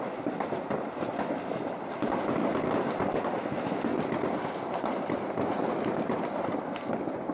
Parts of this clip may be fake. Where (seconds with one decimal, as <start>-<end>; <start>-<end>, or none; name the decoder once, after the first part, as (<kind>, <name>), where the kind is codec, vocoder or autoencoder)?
3.9-5.9 (vocoder, BigVGAN v2)